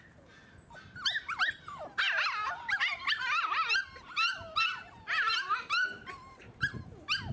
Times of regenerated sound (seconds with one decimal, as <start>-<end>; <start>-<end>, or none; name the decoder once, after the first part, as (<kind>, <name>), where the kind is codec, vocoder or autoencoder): 2.4-6.8 (vocoder, BigVGAN v2)